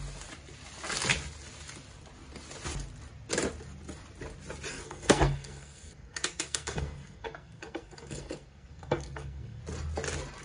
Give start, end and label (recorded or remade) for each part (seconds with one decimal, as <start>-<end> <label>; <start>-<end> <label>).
0.0-4.7 recorded; 4.7-9.6 remade; 9.6-10.4 recorded